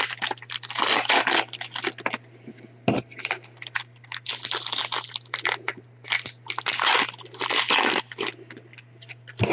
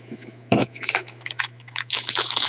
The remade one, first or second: second